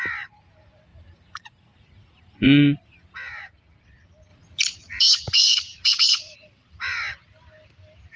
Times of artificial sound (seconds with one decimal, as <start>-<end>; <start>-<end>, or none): 0.9-3.5; 4.3-5.0; 5.4-7.0